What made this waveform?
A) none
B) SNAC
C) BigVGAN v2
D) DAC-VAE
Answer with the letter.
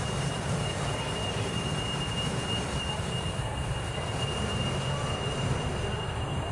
C